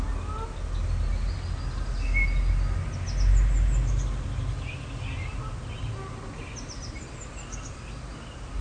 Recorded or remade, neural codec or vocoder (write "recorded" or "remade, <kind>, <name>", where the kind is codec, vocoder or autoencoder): recorded